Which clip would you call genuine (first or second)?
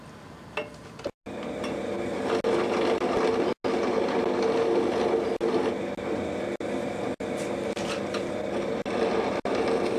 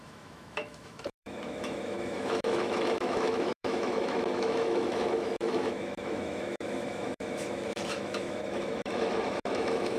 first